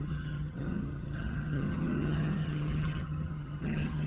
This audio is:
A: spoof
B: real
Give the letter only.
A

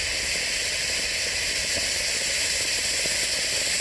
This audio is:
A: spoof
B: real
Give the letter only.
B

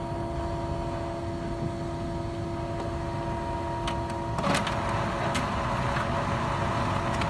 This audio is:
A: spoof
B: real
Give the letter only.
B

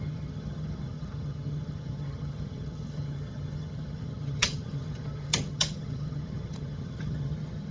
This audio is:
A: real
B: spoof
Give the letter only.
B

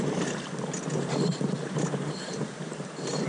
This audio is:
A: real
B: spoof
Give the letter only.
B